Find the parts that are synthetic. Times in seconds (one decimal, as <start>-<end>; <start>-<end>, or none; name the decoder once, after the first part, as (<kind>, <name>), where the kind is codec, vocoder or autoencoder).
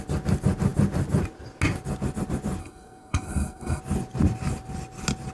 2.6-3.8 (codec, SNAC)